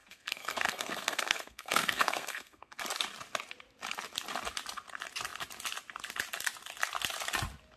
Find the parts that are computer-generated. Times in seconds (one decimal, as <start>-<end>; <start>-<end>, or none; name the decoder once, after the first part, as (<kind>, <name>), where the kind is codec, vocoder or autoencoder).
0.0-2.8 (codec, SNAC)